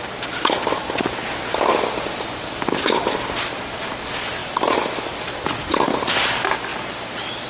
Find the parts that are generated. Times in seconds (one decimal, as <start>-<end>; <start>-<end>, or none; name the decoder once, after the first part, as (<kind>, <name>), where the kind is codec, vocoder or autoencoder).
4.4-4.9 (vocoder, BigVGAN v2); 6.7-7.5